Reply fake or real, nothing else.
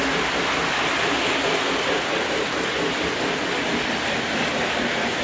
real